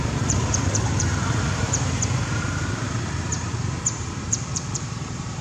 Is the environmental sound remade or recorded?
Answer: remade